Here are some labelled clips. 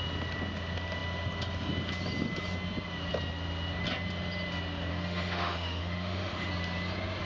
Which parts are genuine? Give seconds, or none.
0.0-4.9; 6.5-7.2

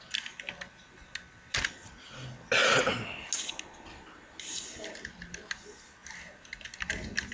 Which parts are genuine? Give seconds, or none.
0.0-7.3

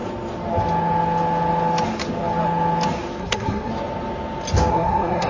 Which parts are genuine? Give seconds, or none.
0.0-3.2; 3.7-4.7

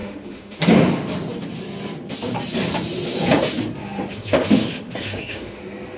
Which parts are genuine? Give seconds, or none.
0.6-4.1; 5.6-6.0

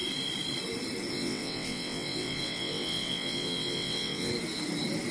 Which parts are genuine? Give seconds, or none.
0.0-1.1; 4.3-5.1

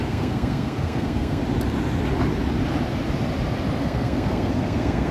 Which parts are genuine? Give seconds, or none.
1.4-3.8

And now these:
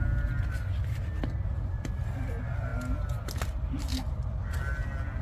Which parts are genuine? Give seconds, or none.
0.0-5.2

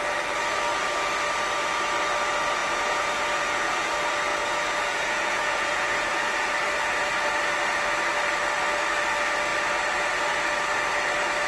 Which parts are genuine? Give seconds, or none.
0.0-2.6; 3.9-4.3; 6.5-11.5